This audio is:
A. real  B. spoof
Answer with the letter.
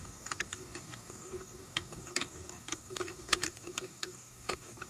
B